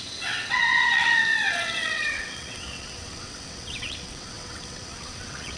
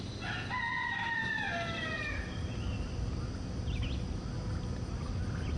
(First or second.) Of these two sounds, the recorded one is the second